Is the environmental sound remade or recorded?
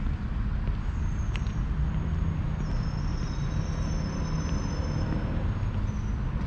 recorded